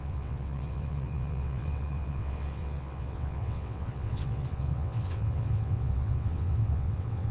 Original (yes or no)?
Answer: no